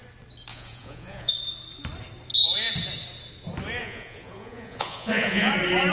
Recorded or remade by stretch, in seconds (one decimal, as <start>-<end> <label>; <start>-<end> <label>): 0.0-0.5 recorded; 0.5-1.3 remade; 1.3-3.8 recorded; 3.8-5.5 remade; 5.5-5.9 recorded